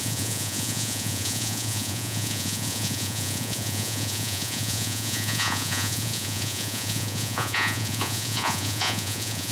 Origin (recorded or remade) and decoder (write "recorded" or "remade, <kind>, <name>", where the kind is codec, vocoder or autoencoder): remade, vocoder, Vocos